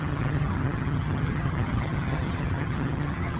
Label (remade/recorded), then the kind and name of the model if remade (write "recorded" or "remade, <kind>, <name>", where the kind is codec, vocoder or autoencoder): remade, vocoder, HiFi-GAN